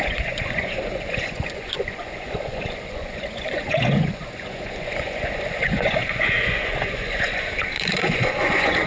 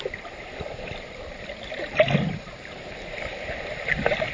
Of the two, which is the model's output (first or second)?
first